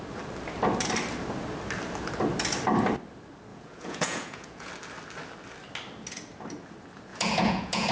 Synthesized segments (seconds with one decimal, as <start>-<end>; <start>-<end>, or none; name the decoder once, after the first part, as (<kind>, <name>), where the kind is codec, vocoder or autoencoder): 3.5-4.7 (vocoder, Vocos); 7.1-7.9

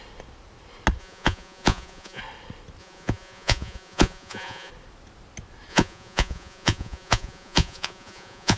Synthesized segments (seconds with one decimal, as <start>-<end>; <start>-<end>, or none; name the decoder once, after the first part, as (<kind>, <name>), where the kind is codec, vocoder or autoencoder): 1.0-2.2 (vocoder, Vocos); 2.8-4.7; 5.7-8.6

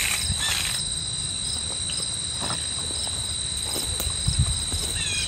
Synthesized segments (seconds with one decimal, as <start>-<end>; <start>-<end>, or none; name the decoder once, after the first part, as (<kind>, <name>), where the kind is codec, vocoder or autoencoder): none

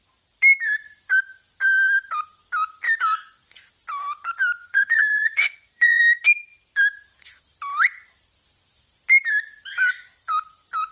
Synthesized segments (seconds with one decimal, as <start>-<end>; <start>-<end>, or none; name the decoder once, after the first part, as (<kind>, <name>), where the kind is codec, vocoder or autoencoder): 4.6-6.0 (vocoder, Vocos)

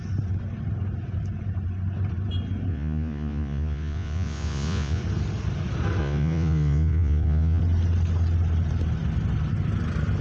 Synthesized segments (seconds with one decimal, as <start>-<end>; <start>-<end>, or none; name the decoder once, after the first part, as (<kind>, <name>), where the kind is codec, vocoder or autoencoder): 2.7-5.0 (vocoder, Vocos); 6.0-7.6

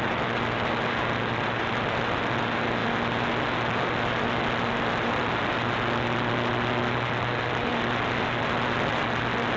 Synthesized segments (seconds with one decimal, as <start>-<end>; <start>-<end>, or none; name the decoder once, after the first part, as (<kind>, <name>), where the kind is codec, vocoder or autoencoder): none